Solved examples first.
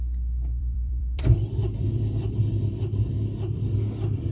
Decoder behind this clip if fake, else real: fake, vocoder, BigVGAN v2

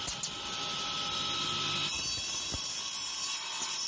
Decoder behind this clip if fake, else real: real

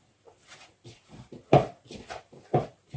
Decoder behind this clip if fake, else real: fake, vocoder, BigVGAN v2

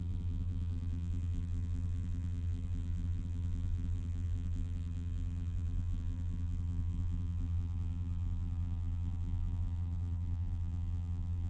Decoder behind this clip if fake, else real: fake, vocoder, BigVGAN v2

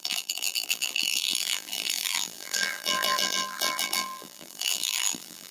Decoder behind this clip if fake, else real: fake, vocoder, BigVGAN v2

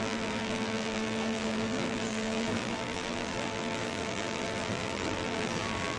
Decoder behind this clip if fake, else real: fake, vocoder, BigVGAN v2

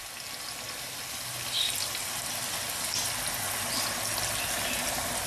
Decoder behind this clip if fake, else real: real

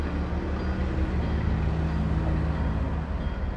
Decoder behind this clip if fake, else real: real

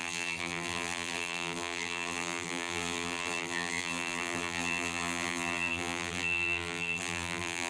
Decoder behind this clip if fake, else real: fake, vocoder, BigVGAN v2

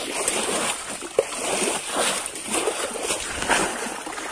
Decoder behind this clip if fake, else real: real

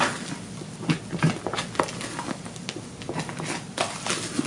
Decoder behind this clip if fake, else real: real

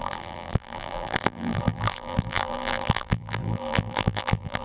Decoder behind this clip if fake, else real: fake, vocoder, BigVGAN v2